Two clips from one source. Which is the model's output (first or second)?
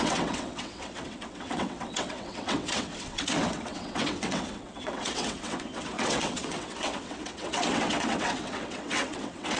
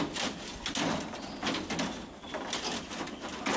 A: first